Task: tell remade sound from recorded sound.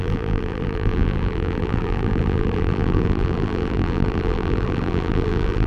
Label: remade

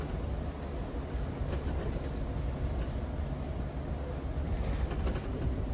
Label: recorded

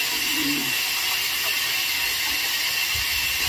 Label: recorded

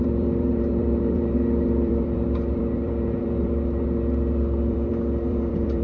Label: remade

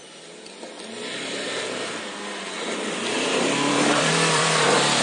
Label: remade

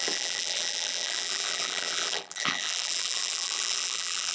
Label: remade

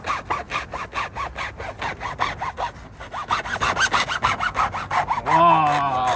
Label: recorded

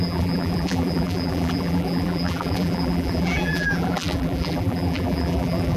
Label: remade